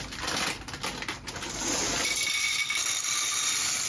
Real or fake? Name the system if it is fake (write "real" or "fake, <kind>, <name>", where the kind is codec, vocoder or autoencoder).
real